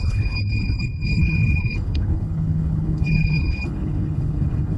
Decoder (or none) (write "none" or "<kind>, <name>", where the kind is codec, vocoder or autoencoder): codec, HILCodec